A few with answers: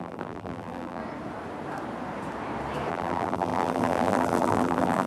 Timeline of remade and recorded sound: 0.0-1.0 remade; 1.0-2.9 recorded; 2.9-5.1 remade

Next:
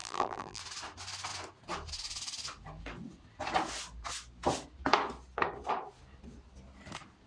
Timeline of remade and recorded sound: 0.0-0.6 remade; 0.6-7.3 recorded

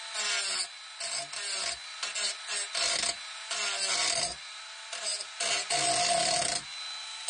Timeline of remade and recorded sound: 0.0-7.3 recorded

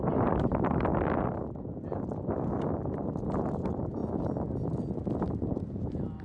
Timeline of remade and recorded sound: 0.0-0.9 remade; 0.9-2.9 recorded; 2.9-4.0 remade; 4.0-5.4 recorded; 5.4-6.2 remade